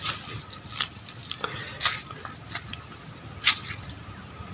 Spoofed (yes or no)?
no